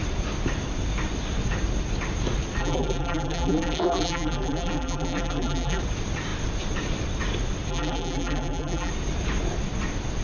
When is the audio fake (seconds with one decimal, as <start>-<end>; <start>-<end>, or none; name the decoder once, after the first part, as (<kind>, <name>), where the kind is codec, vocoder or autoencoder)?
2.6-5.8 (vocoder, BigVGAN v2); 7.7-8.9